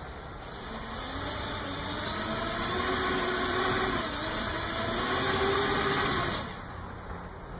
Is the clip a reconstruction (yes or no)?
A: no